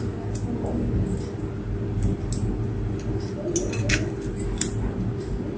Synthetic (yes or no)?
no